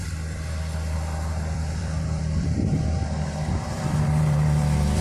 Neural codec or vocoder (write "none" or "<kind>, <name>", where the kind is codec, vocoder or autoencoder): vocoder, BigVGAN v2